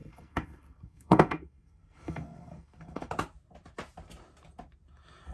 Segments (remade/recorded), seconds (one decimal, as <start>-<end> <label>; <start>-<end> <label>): 0.0-3.1 remade; 3.1-5.3 recorded

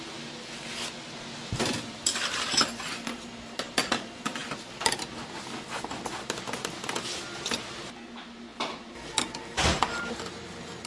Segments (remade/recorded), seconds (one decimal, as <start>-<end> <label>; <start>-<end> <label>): 0.0-10.9 recorded

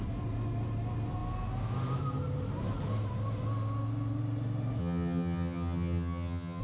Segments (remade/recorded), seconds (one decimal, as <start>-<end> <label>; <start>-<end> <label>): 0.0-4.8 recorded; 4.8-6.6 remade

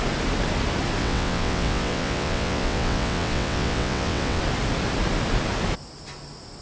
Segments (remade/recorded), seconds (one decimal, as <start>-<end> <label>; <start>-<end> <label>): 0.0-1.0 recorded; 1.0-4.4 remade; 4.4-6.6 recorded

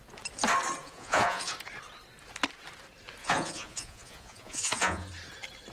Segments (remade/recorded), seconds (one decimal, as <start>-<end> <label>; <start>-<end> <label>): 0.0-0.8 recorded; 0.8-1.5 remade; 1.5-3.2 recorded; 3.2-5.1 remade; 5.1-5.7 recorded